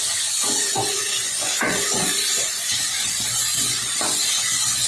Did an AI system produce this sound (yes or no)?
yes